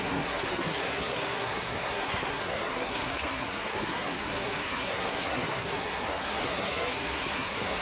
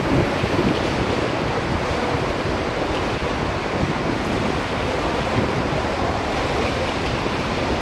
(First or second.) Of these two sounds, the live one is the second